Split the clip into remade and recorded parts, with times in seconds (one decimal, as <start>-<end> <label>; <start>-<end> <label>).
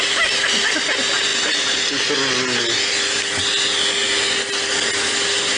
0.0-5.6 recorded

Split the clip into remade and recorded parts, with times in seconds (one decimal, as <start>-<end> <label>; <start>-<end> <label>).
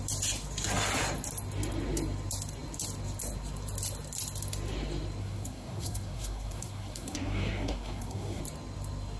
0.0-5.2 recorded; 5.2-8.4 remade; 8.4-9.2 recorded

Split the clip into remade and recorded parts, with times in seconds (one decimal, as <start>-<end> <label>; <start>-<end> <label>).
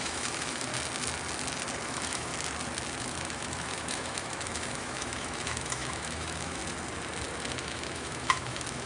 0.0-0.7 remade; 0.7-1.9 recorded; 1.9-2.3 remade; 2.3-3.0 recorded; 3.0-6.6 remade; 6.6-7.6 recorded; 7.6-8.9 remade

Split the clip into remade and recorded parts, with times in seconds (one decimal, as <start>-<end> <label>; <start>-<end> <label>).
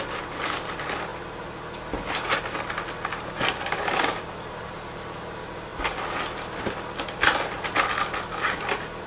0.0-1.1 remade; 1.1-3.3 recorded; 3.3-5.7 remade; 5.7-9.1 recorded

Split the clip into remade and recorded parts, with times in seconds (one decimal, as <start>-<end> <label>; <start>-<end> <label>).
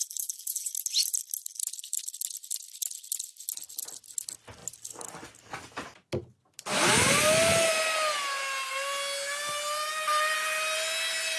0.0-0.7 remade; 0.7-11.4 recorded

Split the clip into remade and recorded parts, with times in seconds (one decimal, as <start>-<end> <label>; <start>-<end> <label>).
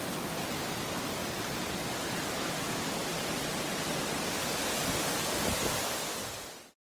0.0-1.2 remade; 1.2-2.6 recorded; 2.6-3.0 remade; 3.0-5.7 recorded; 5.7-7.0 remade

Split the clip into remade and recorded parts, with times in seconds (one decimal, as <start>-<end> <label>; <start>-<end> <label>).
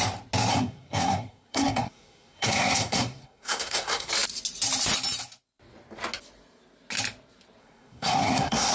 0.0-0.5 recorded; 0.5-4.1 remade; 4.1-7.6 recorded; 7.6-8.7 remade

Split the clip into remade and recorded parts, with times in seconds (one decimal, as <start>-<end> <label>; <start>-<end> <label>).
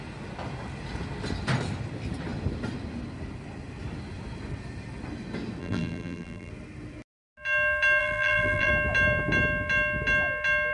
0.0-5.6 recorded; 5.6-6.5 remade; 6.5-8.0 recorded; 8.0-8.7 remade; 8.7-10.7 recorded